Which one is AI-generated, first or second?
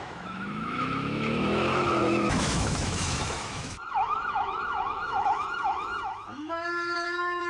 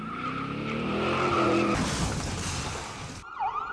first